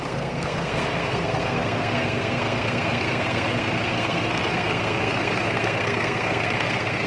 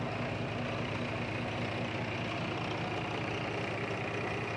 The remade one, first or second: first